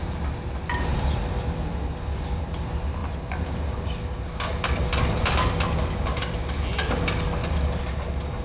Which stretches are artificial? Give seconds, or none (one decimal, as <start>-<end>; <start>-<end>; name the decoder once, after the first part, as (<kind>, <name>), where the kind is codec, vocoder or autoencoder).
none